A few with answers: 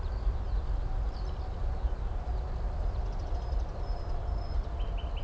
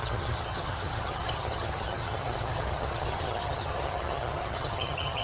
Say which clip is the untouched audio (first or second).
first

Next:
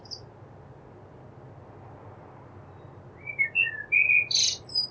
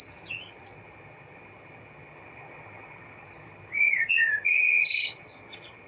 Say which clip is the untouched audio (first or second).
first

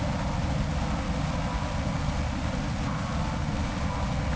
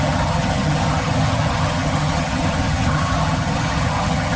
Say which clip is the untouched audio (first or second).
first